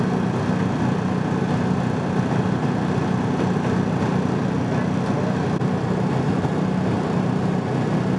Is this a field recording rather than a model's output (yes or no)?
yes